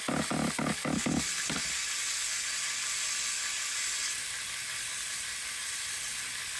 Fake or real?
real